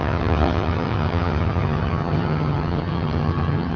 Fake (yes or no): yes